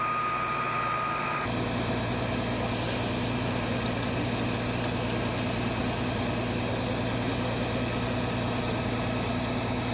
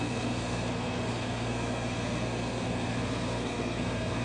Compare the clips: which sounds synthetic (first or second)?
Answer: second